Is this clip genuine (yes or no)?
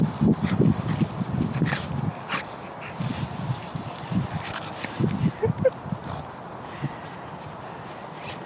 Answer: yes